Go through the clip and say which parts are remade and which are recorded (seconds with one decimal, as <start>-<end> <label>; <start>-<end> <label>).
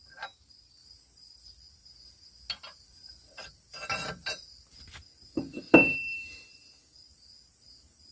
0.0-8.1 recorded